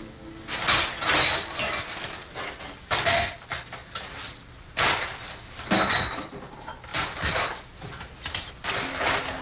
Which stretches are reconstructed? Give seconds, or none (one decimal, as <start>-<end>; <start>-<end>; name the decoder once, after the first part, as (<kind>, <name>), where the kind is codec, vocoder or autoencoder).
6.9-8.5 (vocoder, BigVGAN v2)